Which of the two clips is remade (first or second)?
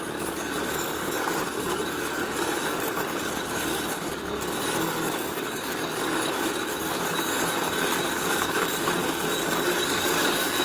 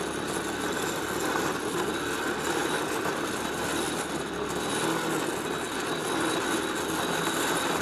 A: first